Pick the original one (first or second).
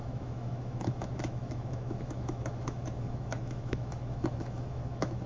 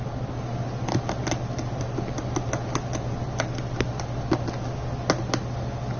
second